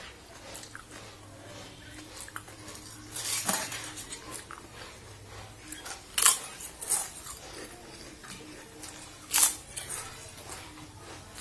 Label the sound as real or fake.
real